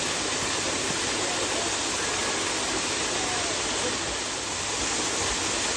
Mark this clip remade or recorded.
recorded